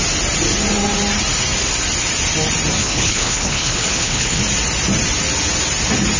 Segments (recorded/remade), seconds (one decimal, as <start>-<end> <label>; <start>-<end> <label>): 0.0-2.8 recorded; 2.8-4.4 remade; 4.4-6.2 recorded